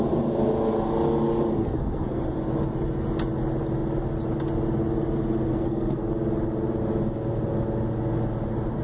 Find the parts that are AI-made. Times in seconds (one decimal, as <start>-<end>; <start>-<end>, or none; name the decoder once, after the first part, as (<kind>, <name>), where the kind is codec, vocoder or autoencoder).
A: 1.6-2.2 (codec, SNAC); 5.5-6.1